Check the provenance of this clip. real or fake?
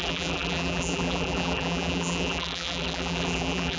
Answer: fake